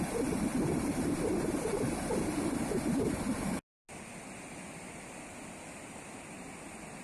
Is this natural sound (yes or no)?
yes